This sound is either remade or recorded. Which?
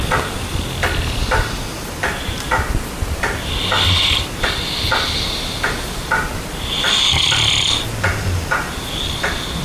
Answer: recorded